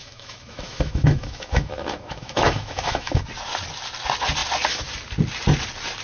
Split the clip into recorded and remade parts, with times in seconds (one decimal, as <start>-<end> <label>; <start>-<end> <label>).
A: 0.0-3.2 remade; 3.2-6.0 recorded